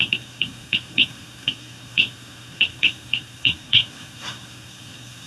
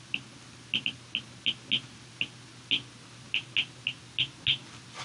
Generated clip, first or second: first